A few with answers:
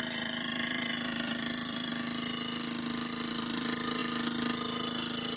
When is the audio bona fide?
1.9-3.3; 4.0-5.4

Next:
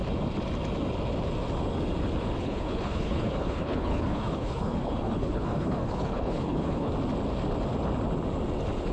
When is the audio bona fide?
0.0-2.4; 6.9-8.9

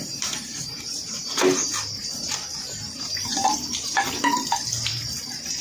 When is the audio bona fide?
0.0-0.5; 1.3-2.2; 4.5-5.6

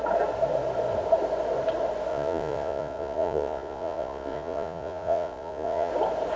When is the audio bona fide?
0.0-2.1; 5.9-6.4

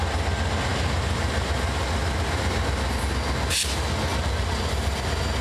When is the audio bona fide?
0.0-4.1; 5.0-5.4

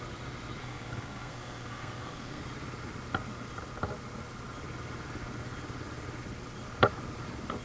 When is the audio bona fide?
0.0-0.6; 2.4-7.6

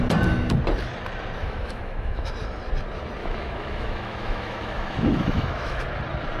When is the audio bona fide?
0.0-1.4; 2.3-3.2; 5.8-6.4